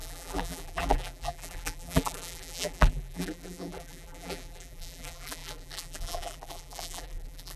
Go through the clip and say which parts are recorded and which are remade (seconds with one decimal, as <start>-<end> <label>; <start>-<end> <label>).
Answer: 0.0-7.6 remade